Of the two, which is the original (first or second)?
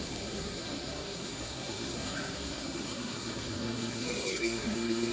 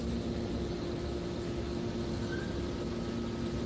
second